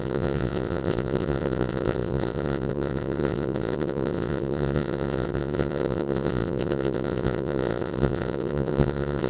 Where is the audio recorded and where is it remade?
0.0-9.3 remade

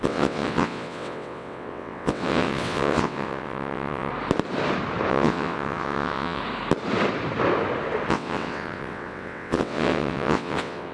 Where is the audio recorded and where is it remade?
0.0-4.1 remade; 4.1-5.1 recorded; 5.1-6.4 remade; 6.4-8.1 recorded; 8.1-10.9 remade

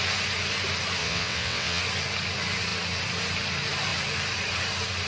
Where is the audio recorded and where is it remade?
0.0-1.0 recorded; 1.0-1.8 remade; 1.8-5.1 recorded

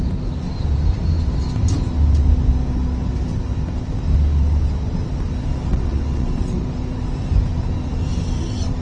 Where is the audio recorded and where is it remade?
0.0-5.7 recorded; 5.7-6.6 remade; 6.6-8.8 recorded

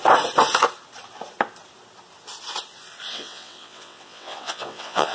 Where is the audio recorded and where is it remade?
0.0-3.1 recorded; 3.1-5.1 remade